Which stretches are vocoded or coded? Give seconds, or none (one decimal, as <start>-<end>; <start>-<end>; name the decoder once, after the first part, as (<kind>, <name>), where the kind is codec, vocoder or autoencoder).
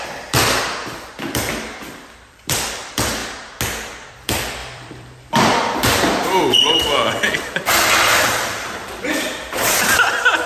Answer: 0.0-3.2 (vocoder, BigVGAN v2); 4.1-10.5